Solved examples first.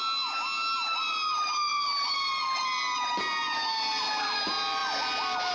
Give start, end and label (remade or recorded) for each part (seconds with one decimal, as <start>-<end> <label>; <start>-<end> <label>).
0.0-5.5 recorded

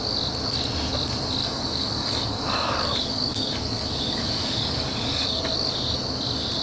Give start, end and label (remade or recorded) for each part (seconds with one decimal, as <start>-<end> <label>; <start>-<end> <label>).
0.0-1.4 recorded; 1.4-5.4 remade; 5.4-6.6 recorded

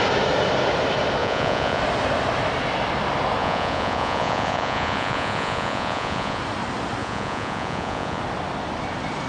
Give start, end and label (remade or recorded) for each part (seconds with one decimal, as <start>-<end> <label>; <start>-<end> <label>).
0.0-1.2 recorded; 1.2-1.8 remade; 1.8-3.4 recorded; 3.4-6.4 remade; 6.4-7.0 recorded; 7.0-8.2 remade; 8.2-9.3 recorded

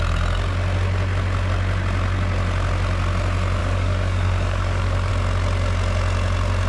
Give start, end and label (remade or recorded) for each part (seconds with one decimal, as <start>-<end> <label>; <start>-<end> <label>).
0.0-3.6 recorded; 3.6-5.1 remade; 5.1-6.7 recorded

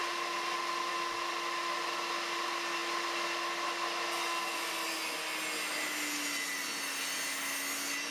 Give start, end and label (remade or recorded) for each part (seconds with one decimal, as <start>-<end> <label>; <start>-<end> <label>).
0.0-8.1 recorded